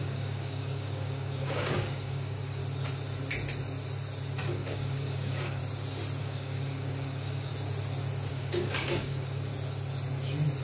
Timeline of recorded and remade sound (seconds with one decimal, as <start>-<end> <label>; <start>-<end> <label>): 0.0-2.6 remade; 2.6-4.5 recorded; 4.5-5.6 remade; 5.6-6.2 recorded; 6.2-7.5 remade; 7.5-8.3 recorded; 8.3-9.5 remade; 9.5-10.6 recorded